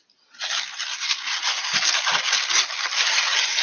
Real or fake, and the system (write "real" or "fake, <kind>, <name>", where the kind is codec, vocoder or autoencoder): real